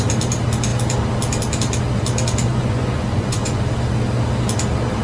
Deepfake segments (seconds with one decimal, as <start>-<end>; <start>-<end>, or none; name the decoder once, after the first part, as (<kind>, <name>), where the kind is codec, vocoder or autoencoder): 2.5-3.6 (vocoder, Vocos)